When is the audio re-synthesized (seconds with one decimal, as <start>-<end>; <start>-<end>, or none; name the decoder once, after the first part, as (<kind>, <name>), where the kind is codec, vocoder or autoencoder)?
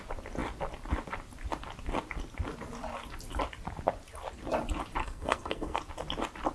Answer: 5.0-5.8 (codec, SNAC)